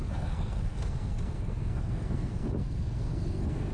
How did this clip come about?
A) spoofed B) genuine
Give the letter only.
A